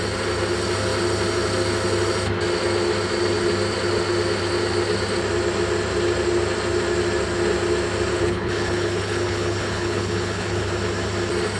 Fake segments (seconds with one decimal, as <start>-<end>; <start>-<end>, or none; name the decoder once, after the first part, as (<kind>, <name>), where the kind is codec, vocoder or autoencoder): 8.1-10.7 (codec, HILCodec)